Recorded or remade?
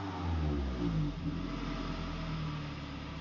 recorded